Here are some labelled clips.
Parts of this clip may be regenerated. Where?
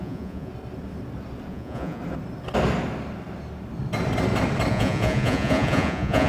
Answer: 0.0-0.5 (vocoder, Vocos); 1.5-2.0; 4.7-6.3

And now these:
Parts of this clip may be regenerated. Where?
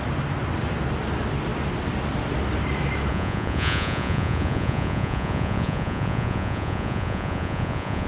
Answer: 3.1-8.1 (vocoder, Vocos)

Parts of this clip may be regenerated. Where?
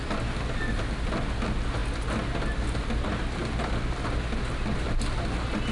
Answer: none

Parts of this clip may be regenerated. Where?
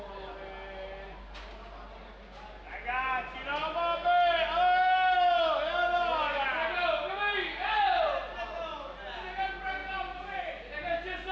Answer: none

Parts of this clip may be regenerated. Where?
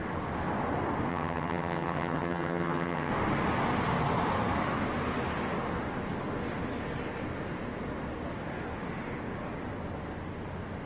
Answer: 1.1-3.1 (vocoder, HiFi-GAN)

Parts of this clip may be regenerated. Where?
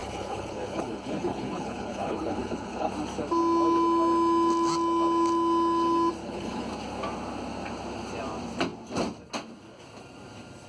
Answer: 0.0-2.9 (codec, HILCodec); 6.2-6.7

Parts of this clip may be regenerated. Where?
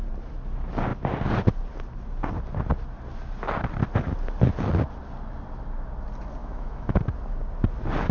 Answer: 6.4-7.0 (autoencoder, DAC-VAE)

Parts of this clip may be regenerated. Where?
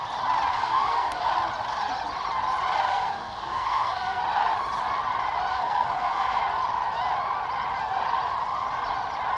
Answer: 0.5-1.3 (codec, SNAC); 2.9-4.2; 5.5-6.4